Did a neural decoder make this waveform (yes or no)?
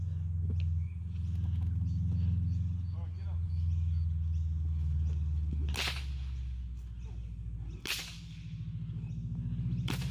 no